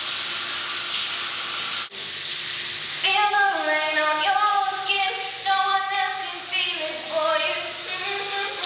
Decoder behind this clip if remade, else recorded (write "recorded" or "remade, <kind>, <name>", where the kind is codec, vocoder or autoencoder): recorded